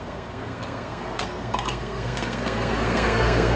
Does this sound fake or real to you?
fake